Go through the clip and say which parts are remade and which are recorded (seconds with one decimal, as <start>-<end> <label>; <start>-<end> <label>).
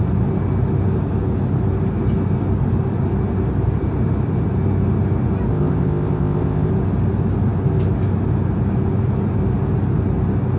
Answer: 0.0-5.5 recorded; 5.5-6.7 remade; 6.7-10.6 recorded